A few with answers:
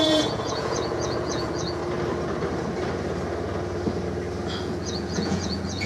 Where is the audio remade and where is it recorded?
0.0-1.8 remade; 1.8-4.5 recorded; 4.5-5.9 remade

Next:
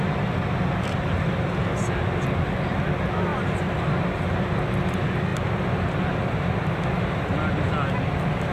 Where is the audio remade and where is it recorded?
0.0-8.5 recorded